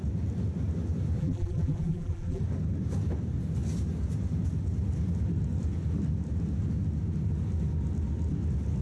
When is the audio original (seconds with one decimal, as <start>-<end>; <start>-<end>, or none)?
0.0-1.2; 2.4-8.8